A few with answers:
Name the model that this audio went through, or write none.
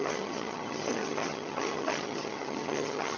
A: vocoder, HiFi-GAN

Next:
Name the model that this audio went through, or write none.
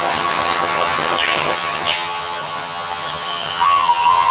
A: vocoder, HiFi-GAN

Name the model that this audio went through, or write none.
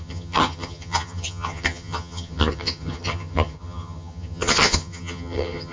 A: vocoder, HiFi-GAN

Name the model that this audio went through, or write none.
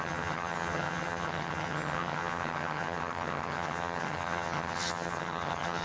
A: vocoder, HiFi-GAN